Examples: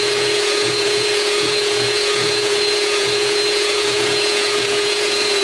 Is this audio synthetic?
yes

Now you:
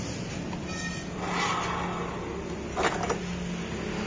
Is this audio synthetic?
no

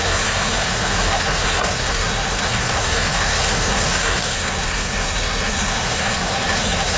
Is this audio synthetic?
yes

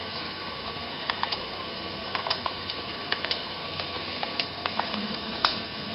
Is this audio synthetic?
yes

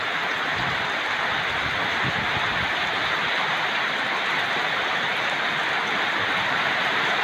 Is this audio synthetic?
yes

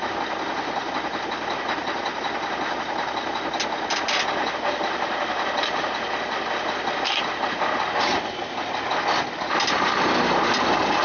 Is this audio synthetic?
no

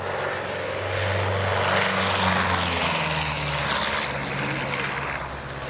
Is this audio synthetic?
no